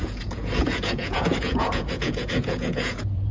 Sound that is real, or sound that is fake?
fake